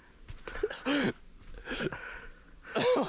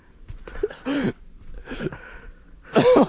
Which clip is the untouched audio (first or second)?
first